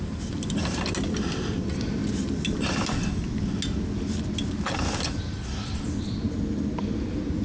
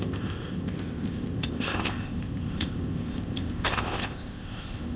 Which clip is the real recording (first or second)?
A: first